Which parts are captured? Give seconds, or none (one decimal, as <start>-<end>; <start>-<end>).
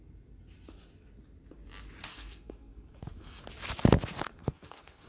0.0-2.1; 3.4-4.4